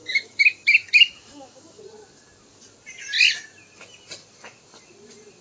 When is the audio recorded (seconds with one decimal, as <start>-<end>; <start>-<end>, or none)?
1.8-5.4